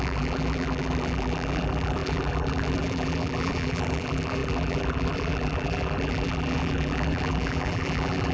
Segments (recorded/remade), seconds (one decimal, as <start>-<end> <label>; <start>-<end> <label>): 0.0-8.3 remade